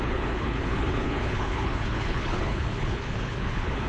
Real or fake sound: fake